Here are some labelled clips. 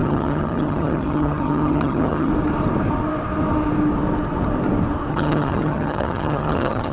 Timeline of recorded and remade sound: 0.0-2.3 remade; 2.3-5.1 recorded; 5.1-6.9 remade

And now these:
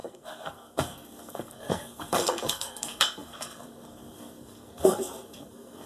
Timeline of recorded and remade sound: 0.0-5.9 remade

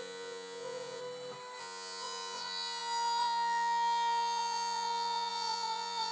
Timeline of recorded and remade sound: 0.0-1.0 remade; 1.0-1.6 recorded; 1.6-6.1 remade

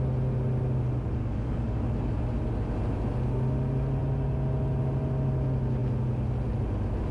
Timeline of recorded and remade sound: 0.0-1.2 recorded; 1.2-1.8 remade; 1.8-7.1 recorded

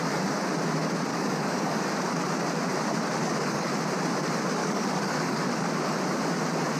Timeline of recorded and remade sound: 0.0-1.1 recorded; 1.1-1.8 remade; 1.8-3.2 recorded; 3.2-3.7 remade; 3.7-4.6 recorded; 4.6-5.4 remade; 5.4-6.8 recorded

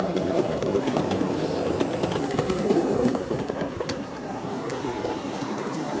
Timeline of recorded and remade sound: 0.0-1.0 remade; 1.0-2.2 recorded; 2.2-6.0 remade

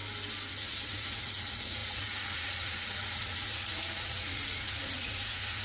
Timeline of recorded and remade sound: 0.0-0.5 recorded; 0.5-5.6 remade